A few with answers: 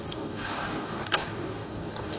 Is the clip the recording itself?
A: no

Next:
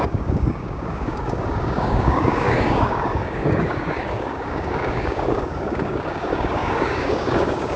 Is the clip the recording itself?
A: no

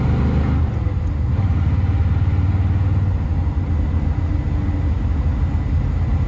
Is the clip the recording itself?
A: yes